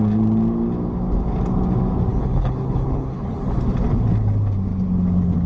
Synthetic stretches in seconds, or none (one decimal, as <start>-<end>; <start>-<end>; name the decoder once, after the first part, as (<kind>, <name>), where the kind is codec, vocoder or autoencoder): 2.1-3.6 (codec, HILCodec)